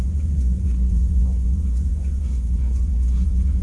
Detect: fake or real fake